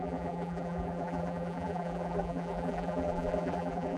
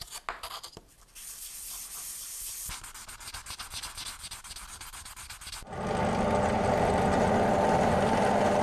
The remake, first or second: first